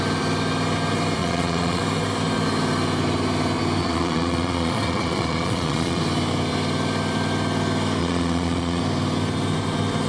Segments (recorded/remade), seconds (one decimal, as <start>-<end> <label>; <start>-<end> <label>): 0.0-1.2 recorded; 1.2-1.8 remade; 1.8-3.8 recorded; 3.8-6.0 remade; 6.0-8.0 recorded; 8.0-8.8 remade; 8.8-10.1 recorded